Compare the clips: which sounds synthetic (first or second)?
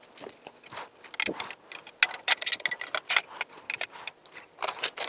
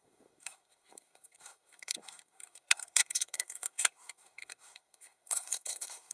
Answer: second